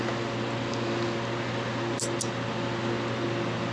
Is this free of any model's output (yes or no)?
yes